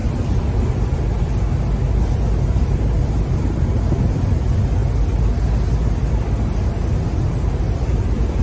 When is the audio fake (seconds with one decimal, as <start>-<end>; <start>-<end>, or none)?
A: none